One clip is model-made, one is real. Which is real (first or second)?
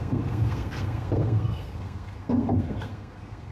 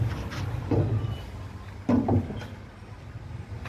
second